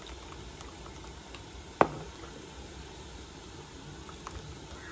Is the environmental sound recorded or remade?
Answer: recorded